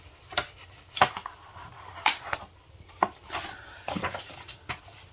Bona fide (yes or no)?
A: yes